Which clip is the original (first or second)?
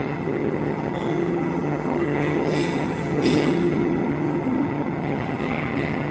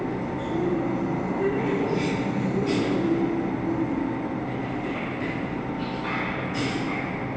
second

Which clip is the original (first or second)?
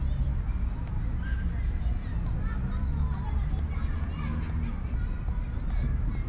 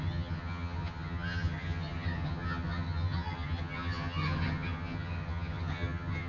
first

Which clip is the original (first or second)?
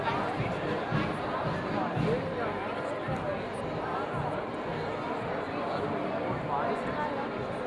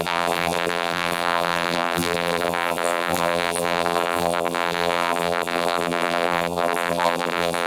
first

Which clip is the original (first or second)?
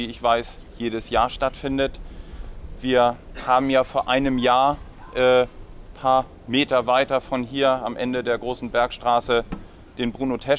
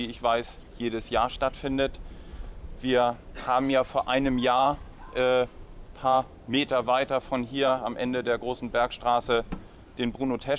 first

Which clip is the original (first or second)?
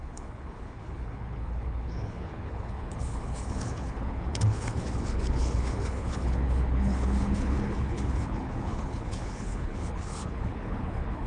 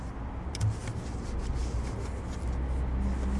second